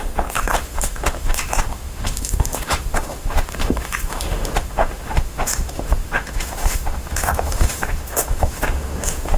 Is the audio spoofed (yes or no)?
yes